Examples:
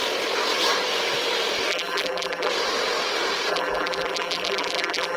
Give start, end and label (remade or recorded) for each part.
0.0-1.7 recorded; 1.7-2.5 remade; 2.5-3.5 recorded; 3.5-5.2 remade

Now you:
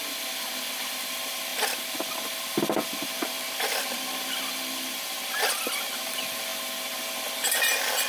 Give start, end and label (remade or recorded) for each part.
0.0-0.7 recorded; 0.7-8.1 remade

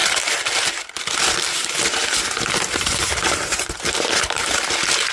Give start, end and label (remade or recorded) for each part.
0.0-3.1 recorded; 3.1-5.1 remade

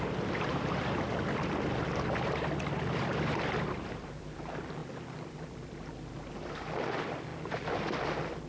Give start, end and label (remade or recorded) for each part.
0.0-8.5 remade

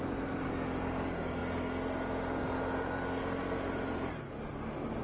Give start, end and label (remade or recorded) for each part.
0.0-5.0 recorded